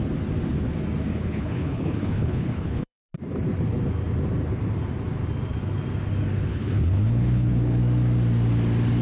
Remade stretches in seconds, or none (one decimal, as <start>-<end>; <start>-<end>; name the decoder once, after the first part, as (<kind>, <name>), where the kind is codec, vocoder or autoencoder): 1.1-3.1 (codec, HILCodec); 6.5-7.8